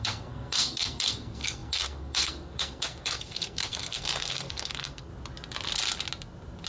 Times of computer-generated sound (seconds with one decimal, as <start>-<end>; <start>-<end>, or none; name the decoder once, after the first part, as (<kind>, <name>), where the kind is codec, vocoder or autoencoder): 0.0-5.1 (codec, SNAC)